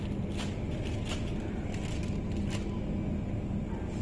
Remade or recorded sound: recorded